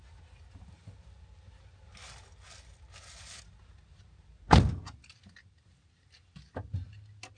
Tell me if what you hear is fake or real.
real